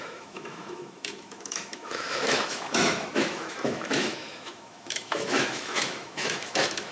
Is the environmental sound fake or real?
fake